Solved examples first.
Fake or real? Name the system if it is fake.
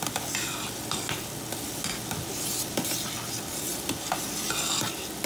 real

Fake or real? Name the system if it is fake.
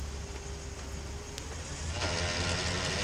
real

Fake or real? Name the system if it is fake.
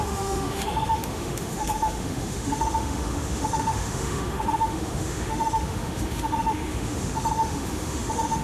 fake, autoencoder, DAC-VAE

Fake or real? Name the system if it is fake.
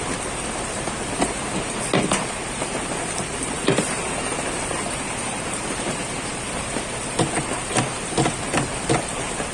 real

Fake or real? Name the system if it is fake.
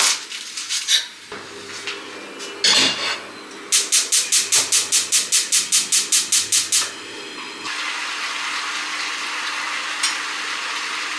real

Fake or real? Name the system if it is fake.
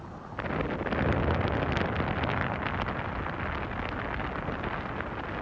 real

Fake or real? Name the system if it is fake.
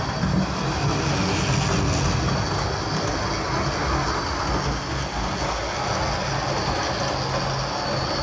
real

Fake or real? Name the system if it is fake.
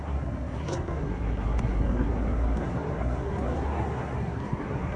fake, codec, SNAC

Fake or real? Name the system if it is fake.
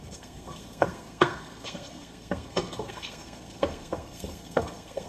fake, codec, SNAC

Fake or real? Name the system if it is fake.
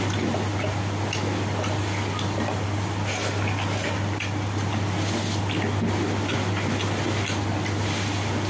real